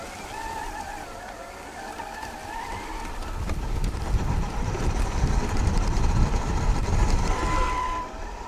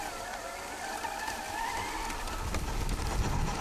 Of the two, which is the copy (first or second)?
first